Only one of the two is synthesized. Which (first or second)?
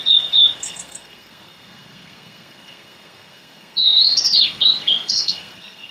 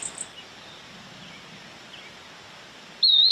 first